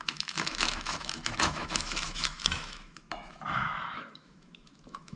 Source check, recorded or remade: remade